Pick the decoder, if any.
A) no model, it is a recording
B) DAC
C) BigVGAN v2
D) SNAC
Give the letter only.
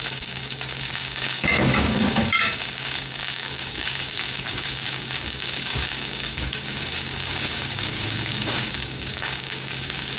B